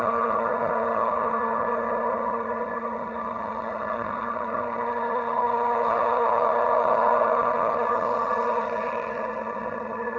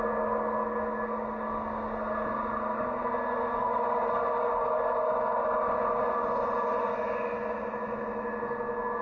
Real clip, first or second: second